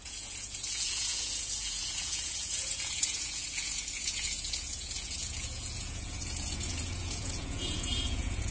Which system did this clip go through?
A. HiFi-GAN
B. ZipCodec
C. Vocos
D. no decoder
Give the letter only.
C